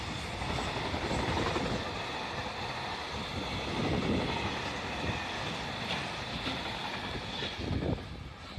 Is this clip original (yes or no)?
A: yes